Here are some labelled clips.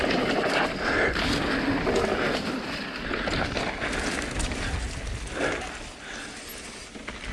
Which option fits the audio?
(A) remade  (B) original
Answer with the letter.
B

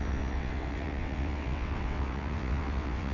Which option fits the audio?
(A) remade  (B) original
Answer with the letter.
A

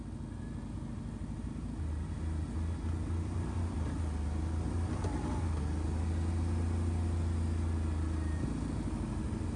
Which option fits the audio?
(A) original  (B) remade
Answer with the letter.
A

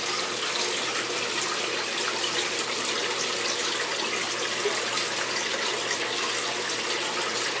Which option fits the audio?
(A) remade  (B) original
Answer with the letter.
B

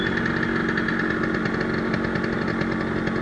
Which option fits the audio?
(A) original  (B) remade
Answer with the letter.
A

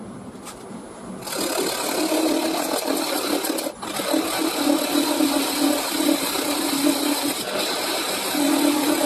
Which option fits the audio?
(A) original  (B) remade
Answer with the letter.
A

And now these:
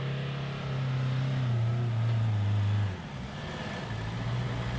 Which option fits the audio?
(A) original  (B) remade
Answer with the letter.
A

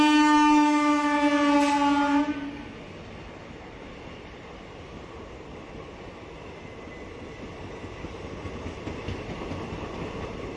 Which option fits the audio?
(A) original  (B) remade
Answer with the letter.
A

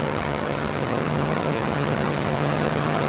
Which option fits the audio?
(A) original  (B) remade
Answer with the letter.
B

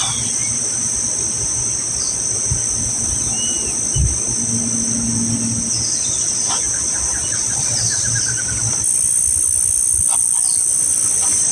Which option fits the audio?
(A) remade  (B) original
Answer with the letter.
B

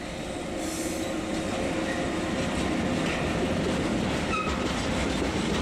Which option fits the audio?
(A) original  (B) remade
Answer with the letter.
A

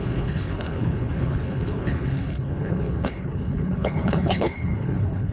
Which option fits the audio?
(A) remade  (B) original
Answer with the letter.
A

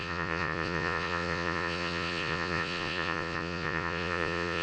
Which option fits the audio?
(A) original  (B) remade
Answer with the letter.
B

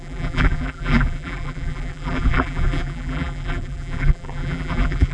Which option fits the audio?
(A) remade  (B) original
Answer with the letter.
A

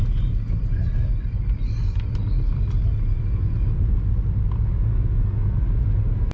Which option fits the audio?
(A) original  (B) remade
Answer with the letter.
A